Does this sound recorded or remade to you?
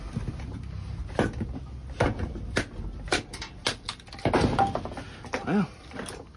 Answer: recorded